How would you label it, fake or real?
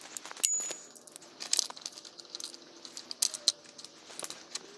real